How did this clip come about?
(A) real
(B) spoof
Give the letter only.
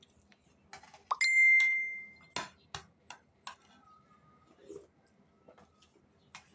A